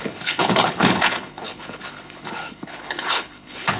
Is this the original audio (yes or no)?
no